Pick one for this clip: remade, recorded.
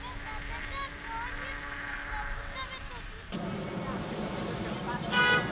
recorded